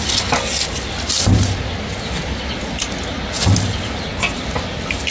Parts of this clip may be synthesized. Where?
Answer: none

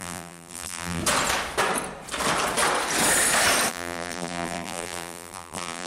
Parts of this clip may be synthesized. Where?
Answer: 0.0-1.0 (vocoder, BigVGAN v2); 3.7-5.9

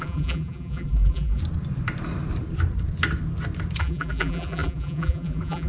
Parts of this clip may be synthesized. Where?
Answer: 0.0-1.4 (vocoder, BigVGAN v2); 3.8-5.7

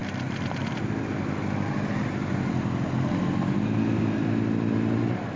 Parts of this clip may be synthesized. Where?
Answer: none

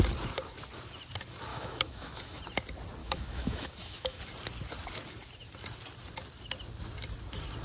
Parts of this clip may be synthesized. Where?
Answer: 1.5-2.4 (autoencoder, DAC-VAE); 3.0-4.2

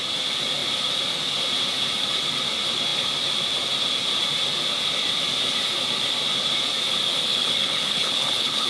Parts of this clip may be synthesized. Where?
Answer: 7.3-8.7 (codec, HILCodec)